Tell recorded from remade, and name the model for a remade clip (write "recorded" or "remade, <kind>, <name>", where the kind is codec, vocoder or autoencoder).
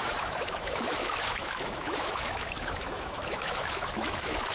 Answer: remade, autoencoder, DAC-VAE